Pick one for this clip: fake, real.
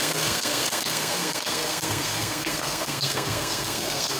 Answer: fake